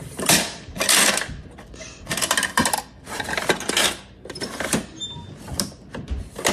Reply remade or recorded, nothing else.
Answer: recorded